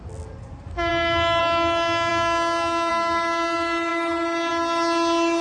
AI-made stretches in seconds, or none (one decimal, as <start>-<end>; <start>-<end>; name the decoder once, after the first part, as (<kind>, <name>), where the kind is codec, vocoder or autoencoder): none